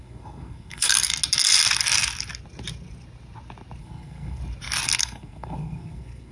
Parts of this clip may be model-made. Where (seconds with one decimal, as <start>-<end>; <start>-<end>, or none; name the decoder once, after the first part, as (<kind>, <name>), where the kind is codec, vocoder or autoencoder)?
0.0-1.1 (codec, SNAC); 3.8-4.4; 5.0-6.3